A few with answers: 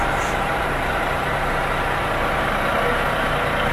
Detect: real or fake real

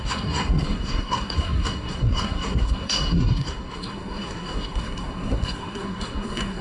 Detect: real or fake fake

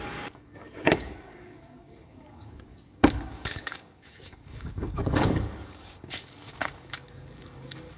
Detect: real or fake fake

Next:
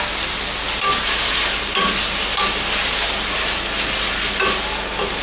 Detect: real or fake real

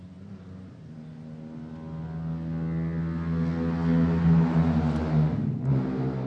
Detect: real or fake real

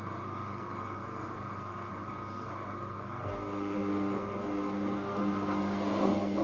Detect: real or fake fake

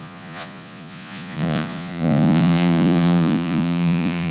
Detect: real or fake fake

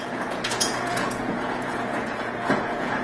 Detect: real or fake fake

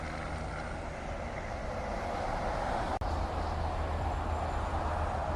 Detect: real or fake real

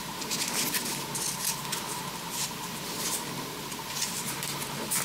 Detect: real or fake real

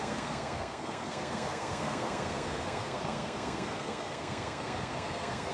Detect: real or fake fake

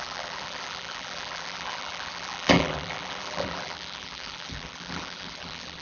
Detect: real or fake fake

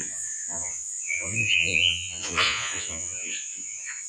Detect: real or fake fake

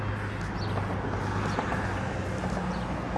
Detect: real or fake real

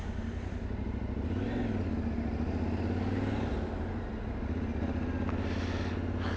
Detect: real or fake real